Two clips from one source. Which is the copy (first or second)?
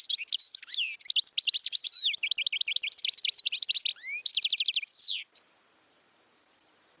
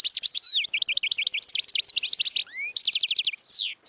first